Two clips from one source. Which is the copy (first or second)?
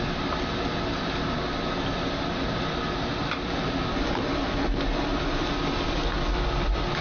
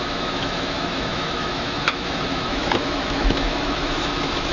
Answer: second